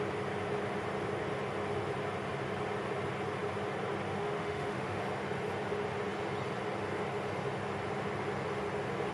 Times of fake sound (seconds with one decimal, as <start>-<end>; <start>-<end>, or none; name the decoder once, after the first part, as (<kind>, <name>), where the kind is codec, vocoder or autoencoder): 4.1-5.0 (autoencoder, DAC-VAE)